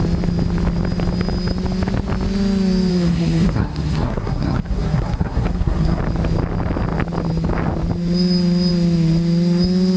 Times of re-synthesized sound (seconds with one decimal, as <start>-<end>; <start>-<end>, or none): 2.9-6.0